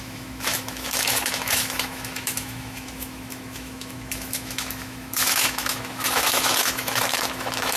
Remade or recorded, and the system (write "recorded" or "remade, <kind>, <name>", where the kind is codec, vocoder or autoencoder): remade, autoencoder, DAC-VAE